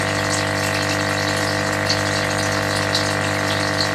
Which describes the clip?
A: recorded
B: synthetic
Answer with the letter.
A